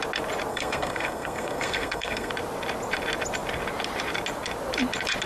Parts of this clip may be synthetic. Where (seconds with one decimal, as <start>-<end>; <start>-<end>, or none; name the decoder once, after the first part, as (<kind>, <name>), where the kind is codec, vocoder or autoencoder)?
0.5-2.3 (codec, SNAC)